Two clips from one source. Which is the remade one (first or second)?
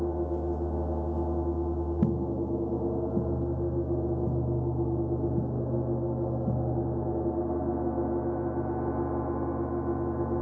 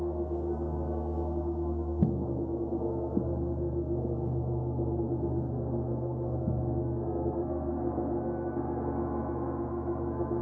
second